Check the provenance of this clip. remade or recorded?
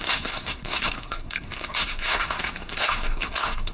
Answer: remade